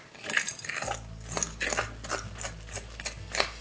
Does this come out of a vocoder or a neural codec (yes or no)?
no